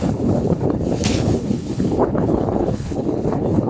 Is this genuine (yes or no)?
no